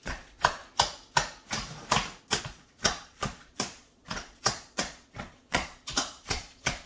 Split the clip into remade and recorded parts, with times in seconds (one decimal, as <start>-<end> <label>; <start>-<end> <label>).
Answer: 0.0-0.6 remade; 0.6-2.4 recorded; 2.4-6.9 remade